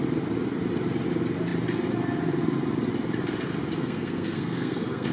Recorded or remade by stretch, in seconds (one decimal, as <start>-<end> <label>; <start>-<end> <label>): 0.0-3.8 recorded; 3.8-5.1 remade